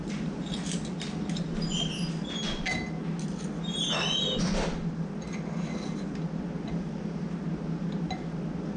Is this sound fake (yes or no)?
no